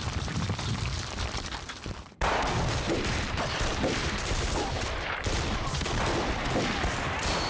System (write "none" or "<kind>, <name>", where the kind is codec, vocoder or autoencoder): vocoder, BigVGAN v2